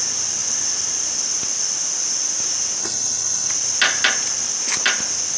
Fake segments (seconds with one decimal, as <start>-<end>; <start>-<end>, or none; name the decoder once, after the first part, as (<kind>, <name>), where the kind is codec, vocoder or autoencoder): 2.8-3.5 (codec, SNAC)